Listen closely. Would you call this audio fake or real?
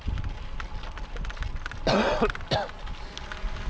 real